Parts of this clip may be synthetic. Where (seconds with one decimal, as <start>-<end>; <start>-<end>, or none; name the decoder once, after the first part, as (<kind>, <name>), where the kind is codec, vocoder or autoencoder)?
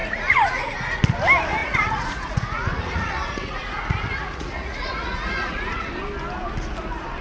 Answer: 0.0-1.0 (vocoder, Vocos); 1.6-5.9